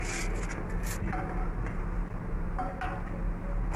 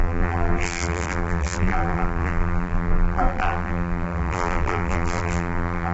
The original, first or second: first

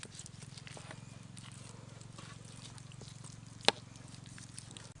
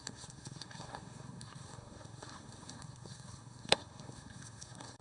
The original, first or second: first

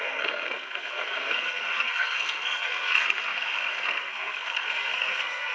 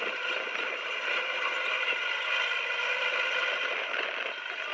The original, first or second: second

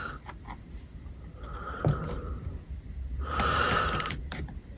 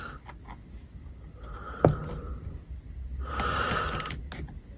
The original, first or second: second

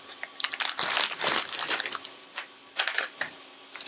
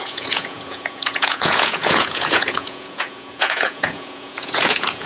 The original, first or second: first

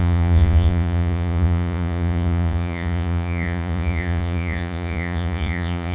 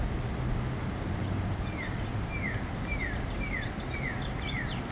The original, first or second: second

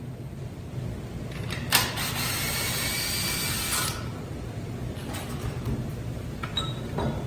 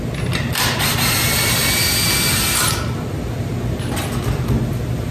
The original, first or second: second